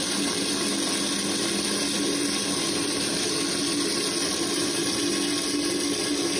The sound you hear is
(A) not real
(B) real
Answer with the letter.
B